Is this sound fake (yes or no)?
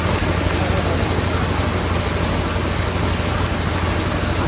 no